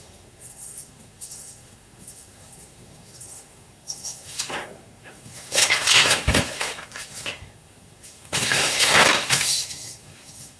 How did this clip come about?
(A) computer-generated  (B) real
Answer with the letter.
A